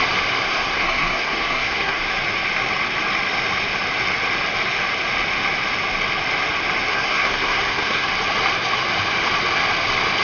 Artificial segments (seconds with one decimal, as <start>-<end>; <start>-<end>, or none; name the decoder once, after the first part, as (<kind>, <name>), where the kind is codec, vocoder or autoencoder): 0.6-2.0 (codec, SNAC); 6.9-8.1